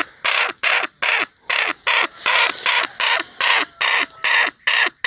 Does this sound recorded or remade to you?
recorded